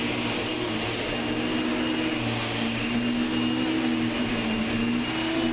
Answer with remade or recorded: recorded